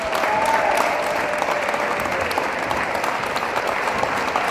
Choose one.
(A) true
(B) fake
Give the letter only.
B